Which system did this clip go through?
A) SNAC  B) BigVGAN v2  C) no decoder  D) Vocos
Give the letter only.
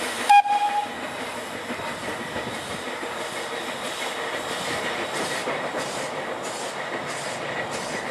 C